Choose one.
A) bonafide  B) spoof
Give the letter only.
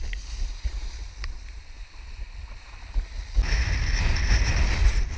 A